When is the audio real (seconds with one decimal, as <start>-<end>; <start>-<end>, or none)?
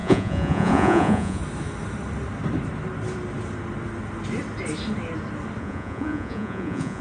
1.4-5.6